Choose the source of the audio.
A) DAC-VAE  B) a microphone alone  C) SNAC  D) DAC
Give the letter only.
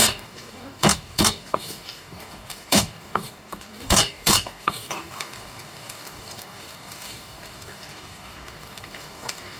D